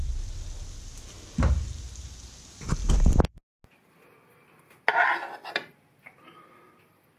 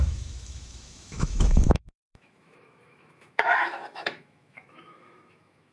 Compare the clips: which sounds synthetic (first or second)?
second